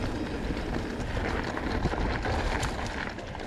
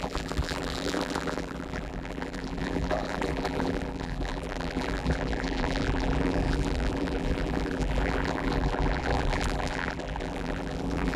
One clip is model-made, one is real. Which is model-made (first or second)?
second